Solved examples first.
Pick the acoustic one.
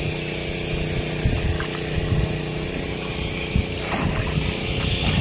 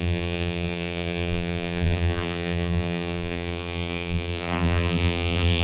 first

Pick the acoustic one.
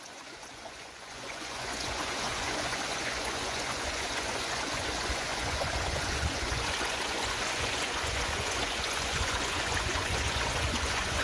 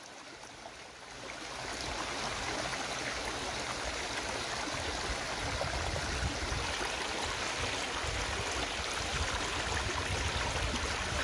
second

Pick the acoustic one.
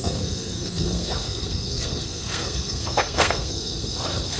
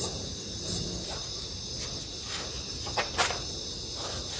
second